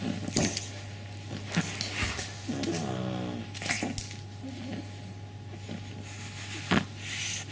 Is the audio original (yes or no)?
yes